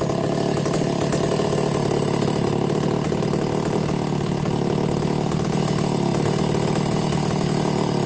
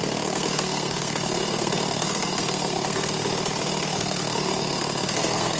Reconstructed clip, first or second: second